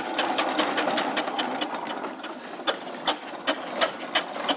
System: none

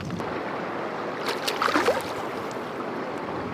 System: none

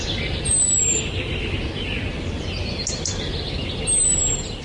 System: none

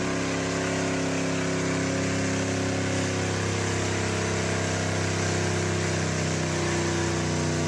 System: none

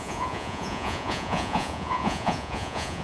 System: vocoder, Vocos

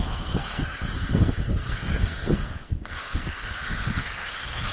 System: codec, SNAC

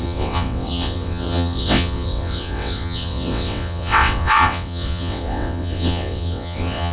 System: vocoder, WaveNeXt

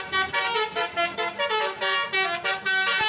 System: none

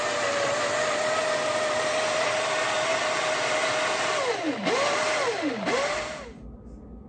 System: none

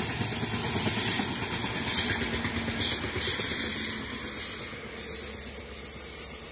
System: none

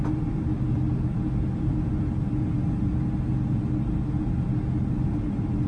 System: none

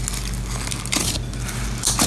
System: none